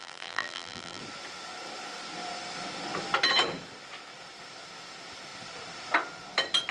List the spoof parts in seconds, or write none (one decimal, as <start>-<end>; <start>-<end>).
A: 0.0-1.0